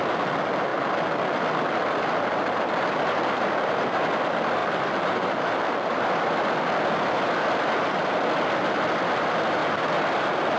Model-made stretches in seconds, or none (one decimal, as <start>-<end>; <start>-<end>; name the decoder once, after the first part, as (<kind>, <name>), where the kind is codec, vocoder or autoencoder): 4.6-6.0 (vocoder, BigVGAN v2)